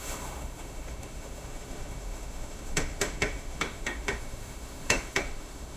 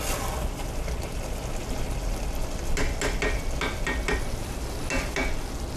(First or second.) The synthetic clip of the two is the first